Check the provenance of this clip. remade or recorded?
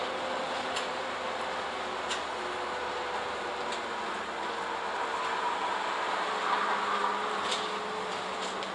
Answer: recorded